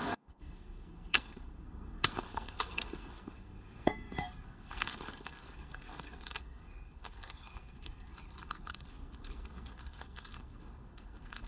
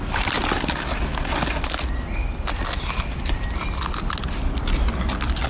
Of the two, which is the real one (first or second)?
second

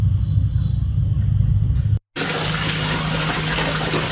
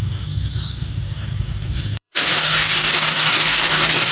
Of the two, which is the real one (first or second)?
first